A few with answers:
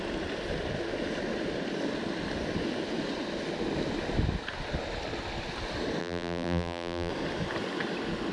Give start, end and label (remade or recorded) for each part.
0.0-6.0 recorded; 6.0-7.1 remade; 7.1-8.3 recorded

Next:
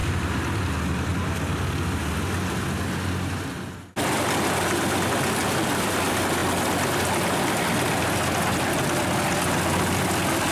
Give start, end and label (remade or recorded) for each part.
0.0-0.7 remade; 0.7-1.1 recorded; 1.1-2.0 remade; 2.0-5.4 recorded; 5.4-6.0 remade; 6.0-10.5 recorded

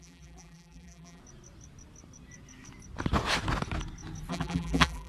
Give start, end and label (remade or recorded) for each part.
0.0-1.2 remade; 1.2-4.3 recorded; 4.3-5.1 remade

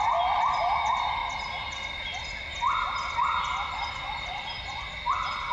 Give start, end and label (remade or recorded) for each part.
0.0-5.5 recorded